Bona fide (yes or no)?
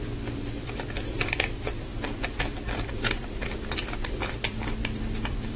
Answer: no